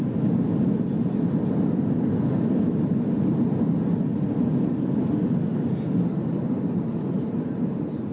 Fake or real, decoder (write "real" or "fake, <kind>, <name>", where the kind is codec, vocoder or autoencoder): real